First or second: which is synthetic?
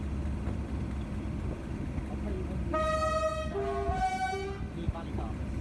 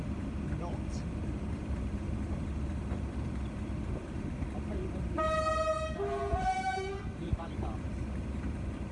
second